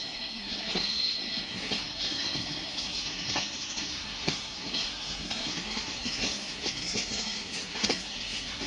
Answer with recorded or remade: remade